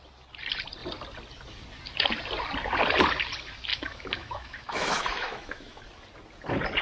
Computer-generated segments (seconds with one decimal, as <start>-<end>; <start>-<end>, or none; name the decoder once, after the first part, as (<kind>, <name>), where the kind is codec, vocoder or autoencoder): 3.7-5.8 (autoencoder, DAC-VAE)